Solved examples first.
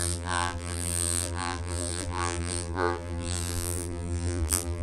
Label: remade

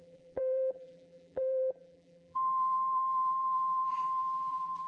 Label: remade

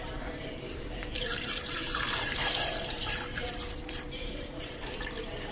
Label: remade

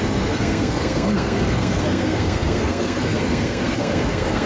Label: remade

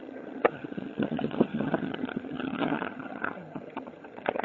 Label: remade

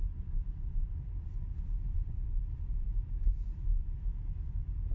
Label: remade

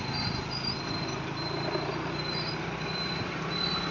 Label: recorded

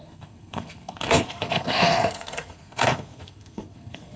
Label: remade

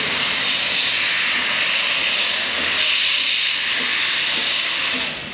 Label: recorded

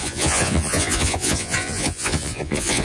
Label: remade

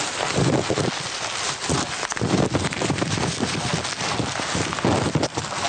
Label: recorded